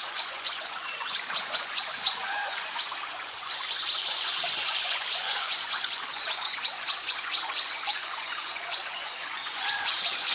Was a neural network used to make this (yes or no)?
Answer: yes